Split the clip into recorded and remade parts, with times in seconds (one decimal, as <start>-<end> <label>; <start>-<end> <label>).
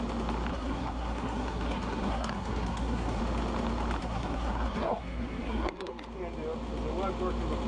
0.0-0.5 recorded; 0.5-3.2 remade; 3.2-4.0 recorded; 4.0-5.9 remade; 5.9-7.7 recorded